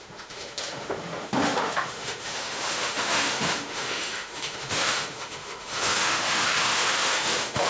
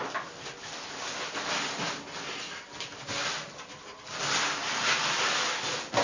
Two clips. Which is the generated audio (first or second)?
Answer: first